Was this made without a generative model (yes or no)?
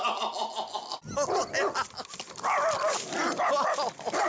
yes